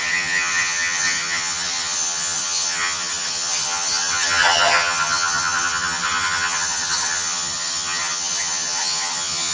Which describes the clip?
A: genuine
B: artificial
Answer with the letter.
B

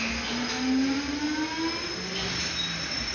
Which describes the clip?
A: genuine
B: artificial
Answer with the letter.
A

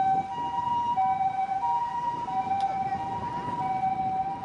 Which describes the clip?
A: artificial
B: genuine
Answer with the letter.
B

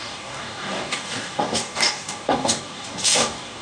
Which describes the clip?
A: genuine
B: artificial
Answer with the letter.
B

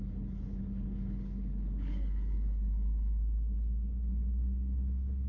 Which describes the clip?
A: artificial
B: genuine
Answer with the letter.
A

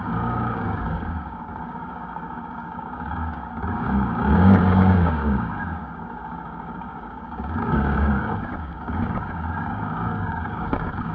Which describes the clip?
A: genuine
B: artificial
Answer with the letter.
B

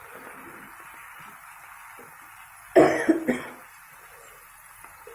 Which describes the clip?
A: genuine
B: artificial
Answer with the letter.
A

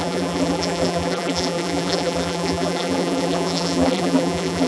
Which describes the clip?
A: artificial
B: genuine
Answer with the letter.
A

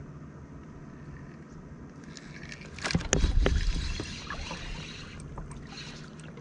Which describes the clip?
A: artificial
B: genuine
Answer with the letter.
B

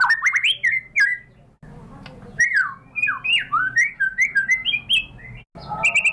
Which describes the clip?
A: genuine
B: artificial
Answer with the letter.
A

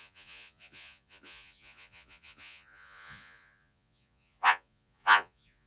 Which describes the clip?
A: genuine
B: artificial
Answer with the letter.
B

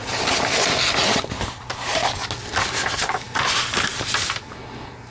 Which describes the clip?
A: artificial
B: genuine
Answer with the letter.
B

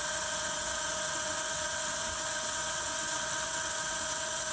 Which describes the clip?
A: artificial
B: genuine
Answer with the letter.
A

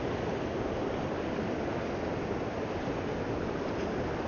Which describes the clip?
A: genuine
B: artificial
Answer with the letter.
A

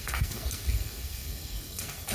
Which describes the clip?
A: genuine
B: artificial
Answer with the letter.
B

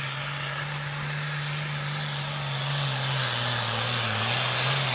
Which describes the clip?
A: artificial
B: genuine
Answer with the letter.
B